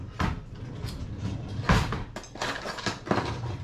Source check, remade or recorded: recorded